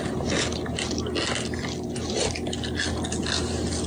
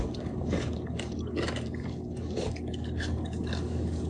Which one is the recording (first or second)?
first